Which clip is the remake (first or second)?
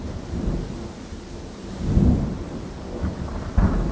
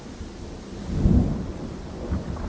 second